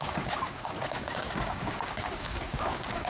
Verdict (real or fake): fake